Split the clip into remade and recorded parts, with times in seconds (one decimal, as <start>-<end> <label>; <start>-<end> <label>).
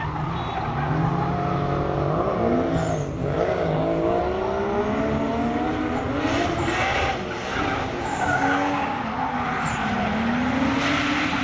0.0-3.2 recorded; 3.2-4.2 remade; 4.2-8.1 recorded; 8.1-9.0 remade; 9.0-11.4 recorded